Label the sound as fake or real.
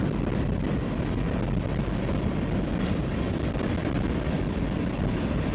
real